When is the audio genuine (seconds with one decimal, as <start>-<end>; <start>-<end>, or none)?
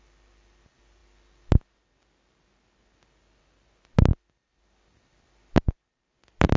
0.0-6.6